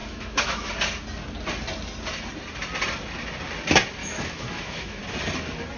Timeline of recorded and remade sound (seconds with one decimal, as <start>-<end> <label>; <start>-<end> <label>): 0.0-0.7 remade; 0.7-4.0 recorded; 4.0-5.0 remade; 5.0-5.8 recorded